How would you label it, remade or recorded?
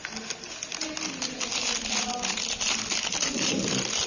recorded